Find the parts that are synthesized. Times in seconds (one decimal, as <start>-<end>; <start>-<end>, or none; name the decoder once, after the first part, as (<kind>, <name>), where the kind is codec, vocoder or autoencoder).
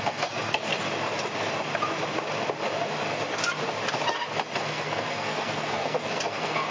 0.0-0.7 (codec, SNAC); 4.6-6.7